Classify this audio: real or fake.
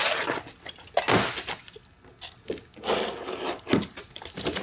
real